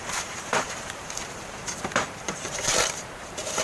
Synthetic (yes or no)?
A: yes